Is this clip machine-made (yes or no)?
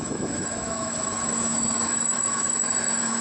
yes